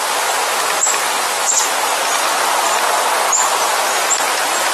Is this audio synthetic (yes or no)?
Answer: no